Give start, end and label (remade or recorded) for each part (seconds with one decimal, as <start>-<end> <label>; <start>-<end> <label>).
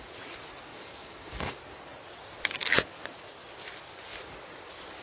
0.0-0.7 recorded; 0.7-1.5 remade; 1.5-5.0 recorded